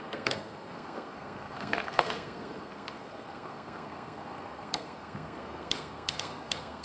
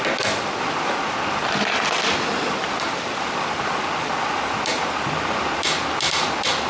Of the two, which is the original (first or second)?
second